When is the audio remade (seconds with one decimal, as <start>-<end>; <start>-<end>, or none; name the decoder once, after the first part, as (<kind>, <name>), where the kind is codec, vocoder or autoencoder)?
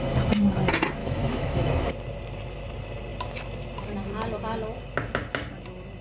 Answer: 1.0-1.9 (autoencoder, DAC-VAE)